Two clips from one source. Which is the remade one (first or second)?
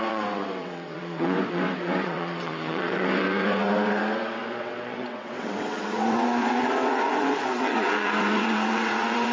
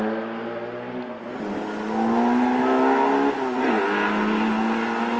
first